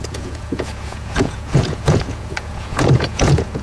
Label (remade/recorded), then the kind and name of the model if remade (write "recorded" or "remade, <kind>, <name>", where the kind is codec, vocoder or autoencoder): remade, vocoder, Vocos